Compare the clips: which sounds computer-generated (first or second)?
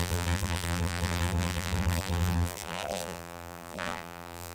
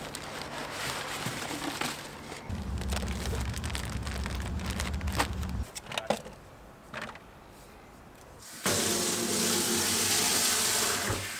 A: first